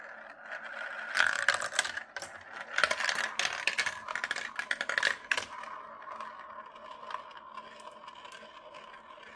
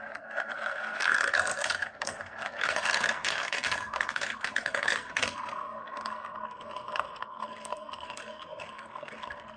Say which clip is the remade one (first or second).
second